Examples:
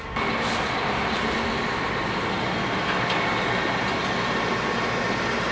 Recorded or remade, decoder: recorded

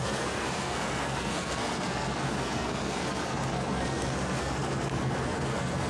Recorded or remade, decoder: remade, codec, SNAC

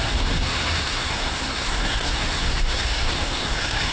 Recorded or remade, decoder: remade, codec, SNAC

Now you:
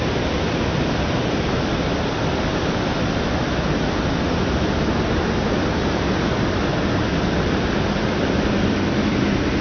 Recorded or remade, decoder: recorded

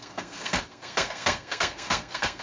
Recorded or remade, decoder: remade, codec, SNAC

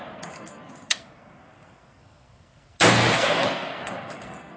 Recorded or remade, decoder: remade, codec, SNAC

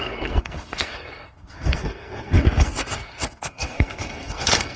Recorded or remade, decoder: remade, codec, SNAC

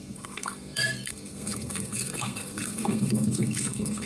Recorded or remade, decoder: remade, codec, SNAC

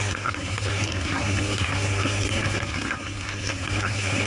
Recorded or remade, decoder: remade, codec, SNAC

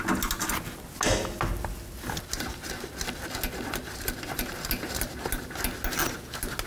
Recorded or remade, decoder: recorded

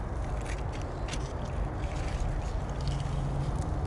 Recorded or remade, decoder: recorded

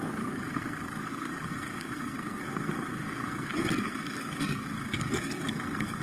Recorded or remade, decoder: remade, codec, SNAC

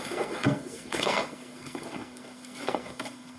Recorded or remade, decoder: remade, codec, SNAC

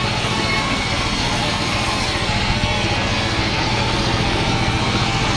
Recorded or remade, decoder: remade, codec, SNAC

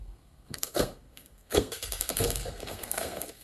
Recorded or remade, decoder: remade, codec, SNAC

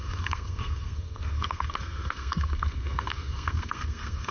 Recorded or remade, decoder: remade, codec, SNAC